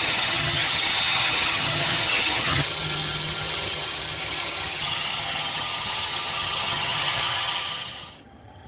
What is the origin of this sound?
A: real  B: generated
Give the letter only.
B